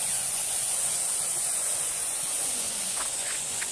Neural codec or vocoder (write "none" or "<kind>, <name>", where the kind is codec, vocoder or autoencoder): vocoder, Vocos